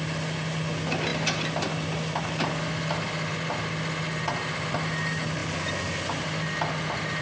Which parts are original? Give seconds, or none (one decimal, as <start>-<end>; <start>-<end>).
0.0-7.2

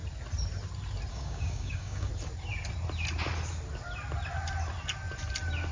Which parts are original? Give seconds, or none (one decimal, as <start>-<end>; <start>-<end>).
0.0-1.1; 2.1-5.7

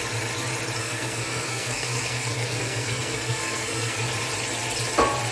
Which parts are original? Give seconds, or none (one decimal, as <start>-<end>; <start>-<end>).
0.0-0.8; 4.0-5.3

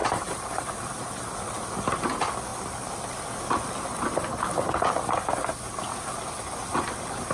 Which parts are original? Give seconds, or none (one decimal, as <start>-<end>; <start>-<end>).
0.8-7.3

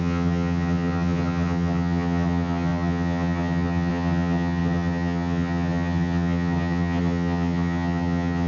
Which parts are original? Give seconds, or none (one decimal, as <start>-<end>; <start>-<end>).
none

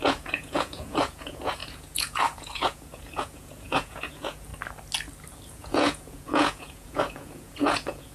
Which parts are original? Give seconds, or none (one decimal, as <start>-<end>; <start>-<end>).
4.5-5.5

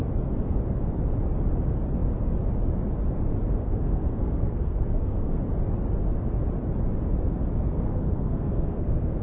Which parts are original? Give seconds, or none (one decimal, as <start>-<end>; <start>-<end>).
0.0-3.6; 5.4-7.7